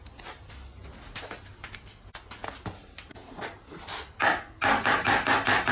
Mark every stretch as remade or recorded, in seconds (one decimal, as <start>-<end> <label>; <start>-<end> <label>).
0.0-5.7 recorded